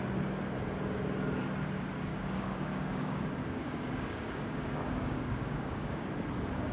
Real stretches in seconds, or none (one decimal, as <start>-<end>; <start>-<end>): 0.0-2.1; 6.1-6.7